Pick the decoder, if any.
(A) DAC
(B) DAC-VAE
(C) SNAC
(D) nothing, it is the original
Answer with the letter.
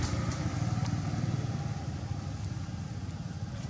D